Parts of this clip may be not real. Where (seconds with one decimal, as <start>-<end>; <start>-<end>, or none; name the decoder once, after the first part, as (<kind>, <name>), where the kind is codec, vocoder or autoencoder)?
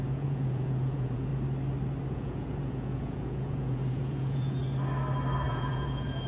0.0-1.3 (vocoder, Vocos); 2.1-4.6; 5.5-6.3